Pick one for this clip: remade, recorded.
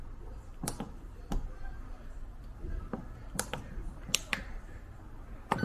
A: remade